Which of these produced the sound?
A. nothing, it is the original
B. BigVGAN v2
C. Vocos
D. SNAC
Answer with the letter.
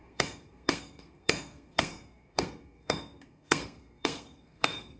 D